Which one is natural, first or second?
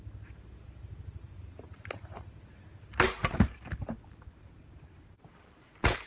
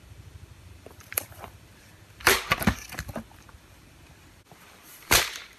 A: first